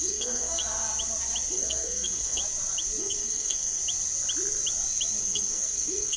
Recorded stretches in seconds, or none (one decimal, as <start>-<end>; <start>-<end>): 0.6-1.5; 2.4-3.0; 3.8-5.2